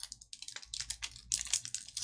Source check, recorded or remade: recorded